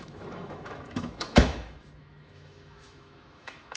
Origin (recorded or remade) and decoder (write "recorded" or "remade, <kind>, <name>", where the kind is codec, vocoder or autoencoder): remade, autoencoder, DAC-VAE